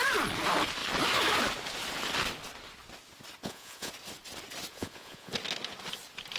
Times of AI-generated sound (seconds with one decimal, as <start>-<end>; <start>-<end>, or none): 3.4-3.9; 4.7-5.3